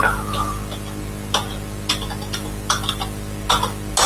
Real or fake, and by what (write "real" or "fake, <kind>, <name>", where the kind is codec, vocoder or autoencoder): real